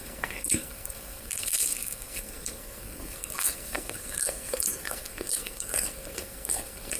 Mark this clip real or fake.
fake